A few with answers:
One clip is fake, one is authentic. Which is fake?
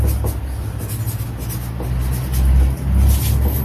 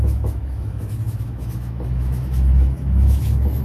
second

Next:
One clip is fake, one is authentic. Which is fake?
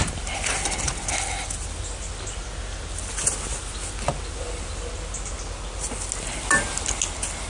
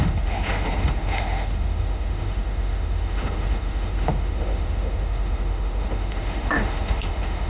second